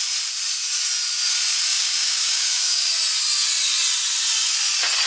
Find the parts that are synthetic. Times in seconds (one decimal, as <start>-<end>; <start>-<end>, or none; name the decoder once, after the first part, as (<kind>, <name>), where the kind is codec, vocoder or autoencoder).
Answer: 1.7-2.9 (codec, DAC)